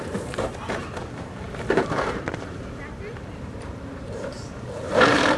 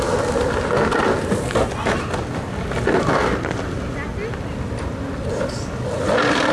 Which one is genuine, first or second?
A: second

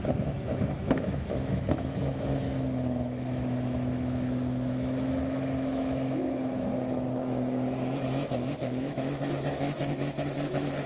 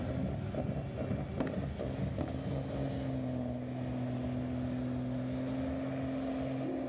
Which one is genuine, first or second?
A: second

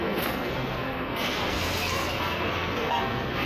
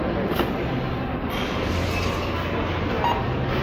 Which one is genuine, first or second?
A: second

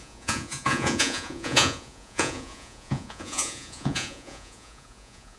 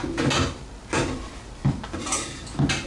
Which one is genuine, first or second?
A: second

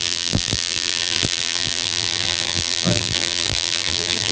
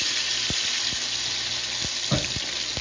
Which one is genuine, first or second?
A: second